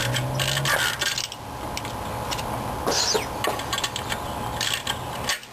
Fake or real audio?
real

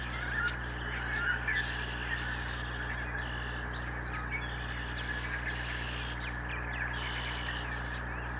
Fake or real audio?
real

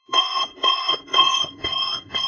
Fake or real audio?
fake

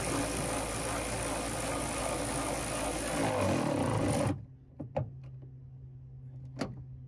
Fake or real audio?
real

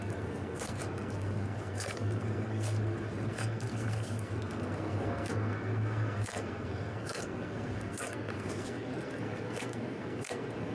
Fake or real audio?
fake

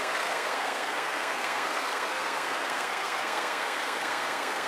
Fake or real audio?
fake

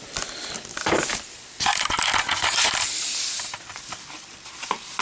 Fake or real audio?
real